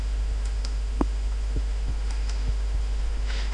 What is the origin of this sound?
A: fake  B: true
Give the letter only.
A